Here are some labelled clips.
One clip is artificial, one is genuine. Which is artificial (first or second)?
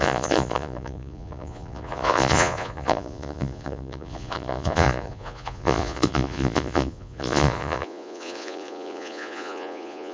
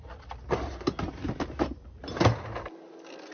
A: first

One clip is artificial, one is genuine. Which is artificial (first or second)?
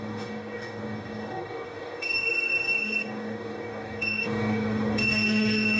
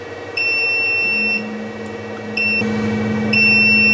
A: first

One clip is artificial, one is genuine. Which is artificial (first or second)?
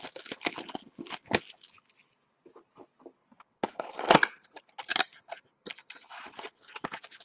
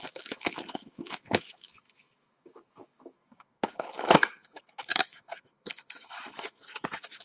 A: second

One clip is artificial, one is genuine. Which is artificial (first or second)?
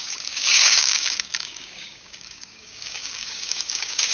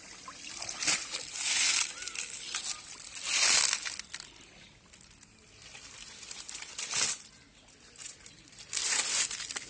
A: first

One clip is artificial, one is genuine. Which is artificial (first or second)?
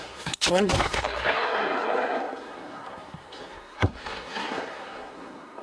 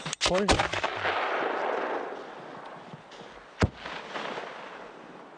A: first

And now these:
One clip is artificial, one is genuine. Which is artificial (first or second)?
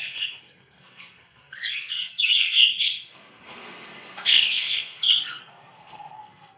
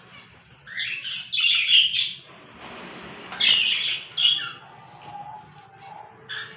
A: first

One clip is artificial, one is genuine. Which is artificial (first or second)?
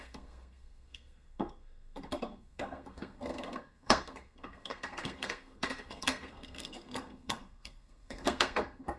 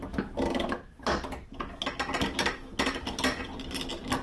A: first